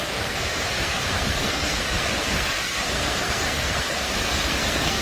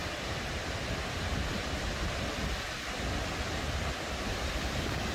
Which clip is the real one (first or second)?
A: second